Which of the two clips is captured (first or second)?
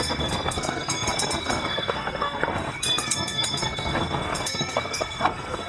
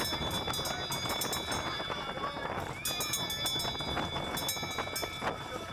second